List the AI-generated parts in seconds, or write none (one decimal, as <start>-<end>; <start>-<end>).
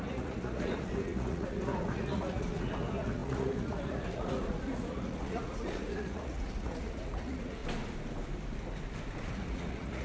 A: 0.0-7.6; 9.2-10.0